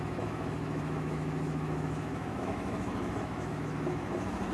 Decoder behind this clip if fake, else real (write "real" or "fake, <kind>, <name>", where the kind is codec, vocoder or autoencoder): fake, autoencoder, DAC-VAE